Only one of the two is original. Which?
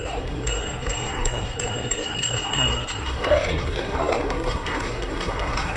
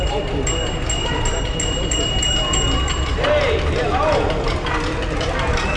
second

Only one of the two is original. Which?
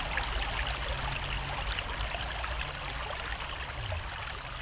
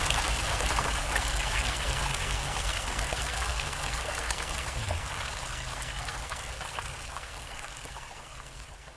first